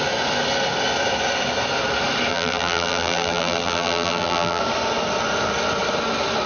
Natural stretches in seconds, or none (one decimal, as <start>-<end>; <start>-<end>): 0.0-2.3; 4.6-6.5